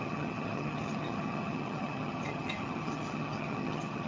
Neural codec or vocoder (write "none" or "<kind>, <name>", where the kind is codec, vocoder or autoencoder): vocoder, HiFi-GAN